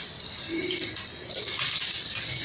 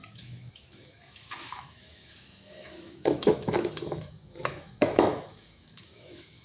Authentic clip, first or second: first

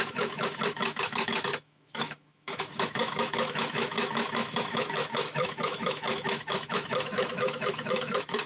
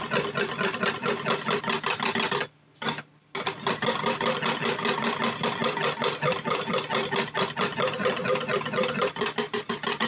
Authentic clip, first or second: second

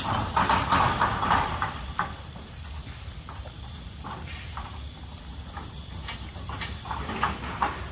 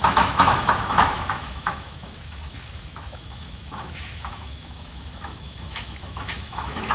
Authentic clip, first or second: first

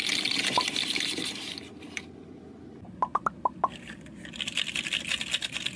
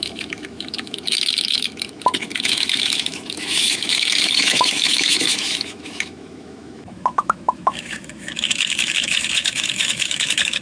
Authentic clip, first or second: first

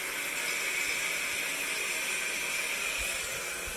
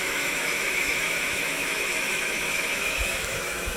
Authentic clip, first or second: first